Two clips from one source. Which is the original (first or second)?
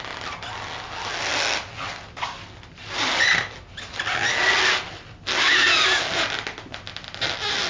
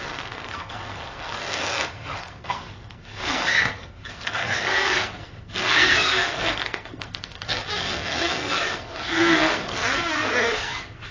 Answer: first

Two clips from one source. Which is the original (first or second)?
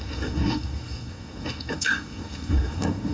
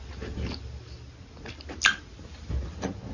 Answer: second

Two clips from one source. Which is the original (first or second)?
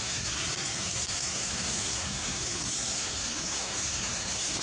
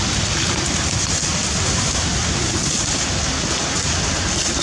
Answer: second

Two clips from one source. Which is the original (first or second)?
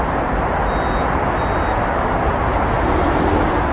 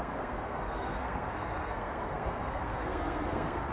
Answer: first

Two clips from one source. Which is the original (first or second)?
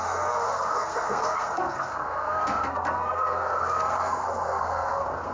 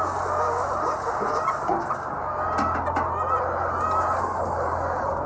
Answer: second